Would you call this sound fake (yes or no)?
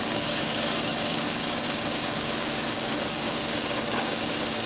yes